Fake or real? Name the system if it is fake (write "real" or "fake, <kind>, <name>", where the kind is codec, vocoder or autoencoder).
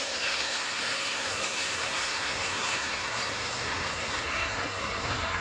fake, codec, SNAC